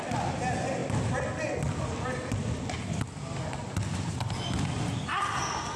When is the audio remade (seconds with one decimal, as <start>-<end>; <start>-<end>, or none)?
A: none